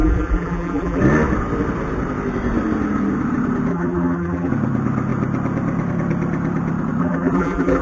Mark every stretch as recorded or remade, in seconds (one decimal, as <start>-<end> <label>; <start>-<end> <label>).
0.0-1.0 remade; 1.0-3.7 recorded; 3.7-4.5 remade; 4.5-7.0 recorded; 7.0-7.8 remade

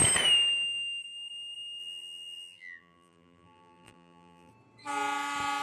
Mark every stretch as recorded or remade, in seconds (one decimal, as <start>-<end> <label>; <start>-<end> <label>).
0.0-1.8 recorded; 1.8-4.5 remade; 4.5-5.6 recorded

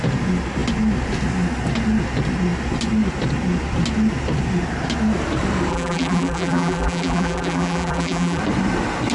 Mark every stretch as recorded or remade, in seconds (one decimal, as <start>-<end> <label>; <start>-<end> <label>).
0.0-5.7 recorded; 5.7-8.4 remade; 8.4-9.1 recorded

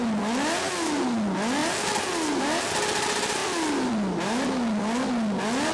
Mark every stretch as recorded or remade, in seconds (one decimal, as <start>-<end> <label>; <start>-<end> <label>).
0.0-5.7 recorded

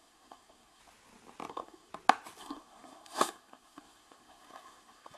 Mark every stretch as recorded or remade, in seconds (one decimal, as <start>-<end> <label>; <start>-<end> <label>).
0.0-0.8 remade; 0.8-1.5 recorded; 1.5-1.9 remade; 1.9-2.4 recorded; 2.4-5.2 remade

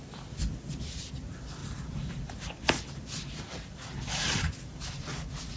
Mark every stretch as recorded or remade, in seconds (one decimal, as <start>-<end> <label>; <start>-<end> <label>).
0.0-5.6 recorded